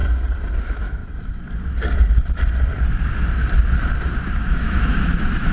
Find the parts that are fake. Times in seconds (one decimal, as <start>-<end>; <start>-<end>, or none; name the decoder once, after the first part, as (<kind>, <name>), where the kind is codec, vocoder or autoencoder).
0.6-1.0 (autoencoder, DAC-VAE); 4.3-5.5